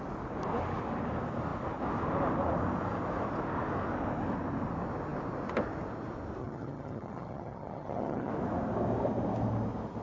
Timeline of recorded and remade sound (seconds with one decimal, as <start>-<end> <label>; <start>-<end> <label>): 0.0-6.4 recorded; 6.4-8.3 remade; 8.3-10.0 recorded